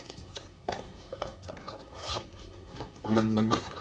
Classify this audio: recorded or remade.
remade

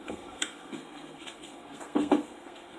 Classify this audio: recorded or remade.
remade